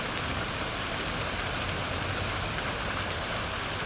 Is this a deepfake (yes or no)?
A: no